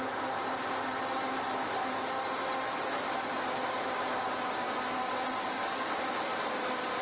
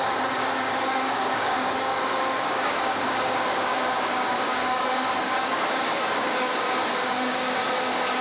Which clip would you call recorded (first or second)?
first